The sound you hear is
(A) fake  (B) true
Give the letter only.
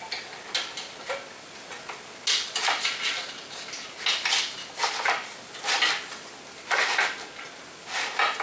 B